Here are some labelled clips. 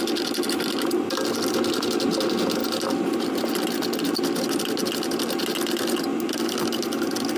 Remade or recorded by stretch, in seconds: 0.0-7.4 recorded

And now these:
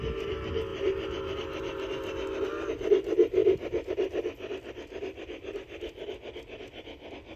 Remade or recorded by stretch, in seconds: 0.0-7.4 recorded

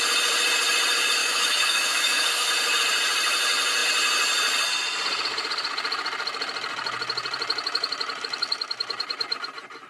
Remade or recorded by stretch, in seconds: 0.0-1.2 recorded; 1.2-2.5 remade; 2.5-9.9 recorded

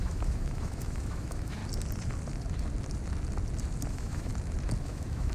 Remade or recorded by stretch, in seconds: 0.0-1.6 remade; 1.6-3.9 recorded; 3.9-4.3 remade; 4.3-4.8 recorded; 4.8-5.3 remade